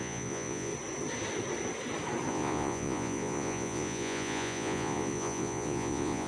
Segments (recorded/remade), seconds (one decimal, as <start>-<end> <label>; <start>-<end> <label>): 0.0-0.7 remade; 0.7-2.3 recorded; 2.3-6.3 remade